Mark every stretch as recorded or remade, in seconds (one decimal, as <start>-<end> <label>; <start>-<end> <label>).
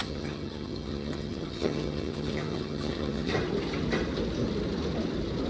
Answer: 0.0-3.3 remade; 3.3-5.5 recorded